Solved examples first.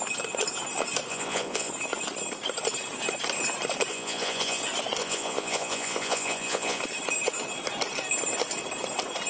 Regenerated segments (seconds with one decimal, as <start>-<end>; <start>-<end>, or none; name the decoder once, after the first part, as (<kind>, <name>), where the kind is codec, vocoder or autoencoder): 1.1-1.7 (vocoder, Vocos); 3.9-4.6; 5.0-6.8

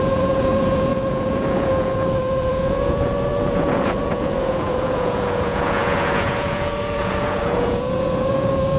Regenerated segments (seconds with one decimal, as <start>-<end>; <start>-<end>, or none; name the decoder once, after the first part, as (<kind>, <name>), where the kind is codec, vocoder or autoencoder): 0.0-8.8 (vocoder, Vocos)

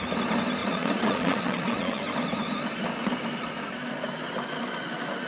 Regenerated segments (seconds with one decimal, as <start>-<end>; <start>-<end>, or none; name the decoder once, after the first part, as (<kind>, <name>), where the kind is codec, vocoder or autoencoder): 0.6-2.0 (vocoder, Vocos)